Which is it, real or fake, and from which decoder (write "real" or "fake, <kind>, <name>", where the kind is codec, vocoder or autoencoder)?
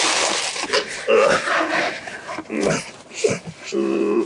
real